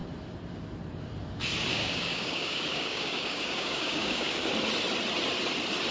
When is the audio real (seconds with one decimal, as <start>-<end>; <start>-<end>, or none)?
0.0-1.7; 4.5-5.9